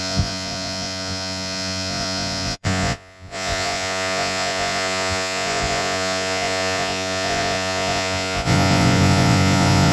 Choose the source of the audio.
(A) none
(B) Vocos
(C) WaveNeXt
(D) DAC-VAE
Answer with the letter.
B